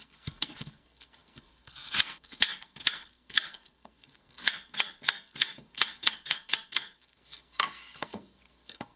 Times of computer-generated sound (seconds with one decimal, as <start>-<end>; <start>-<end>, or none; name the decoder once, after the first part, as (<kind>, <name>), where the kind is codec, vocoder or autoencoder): 0.0-9.0 (codec, SNAC)